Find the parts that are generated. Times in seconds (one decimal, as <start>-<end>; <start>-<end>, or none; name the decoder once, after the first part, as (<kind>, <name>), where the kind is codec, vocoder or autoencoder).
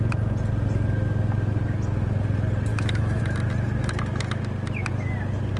2.7-3.2 (autoencoder, DAC-VAE)